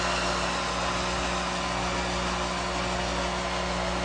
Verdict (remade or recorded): recorded